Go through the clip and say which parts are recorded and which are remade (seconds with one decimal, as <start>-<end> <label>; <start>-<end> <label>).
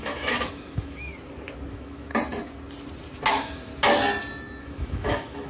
0.0-1.1 remade; 1.1-1.7 recorded; 1.7-2.1 remade; 2.1-3.3 recorded; 3.3-3.7 remade; 3.7-4.6 recorded; 4.6-5.5 remade